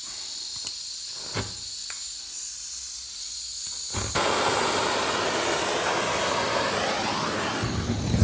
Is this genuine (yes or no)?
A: yes